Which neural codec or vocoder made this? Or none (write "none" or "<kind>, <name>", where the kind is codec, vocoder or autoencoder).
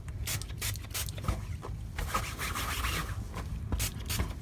none